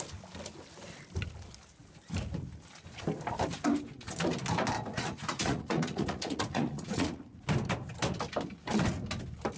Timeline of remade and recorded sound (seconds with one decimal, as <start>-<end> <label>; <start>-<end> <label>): 0.0-4.9 recorded; 4.9-7.4 remade; 7.4-9.6 recorded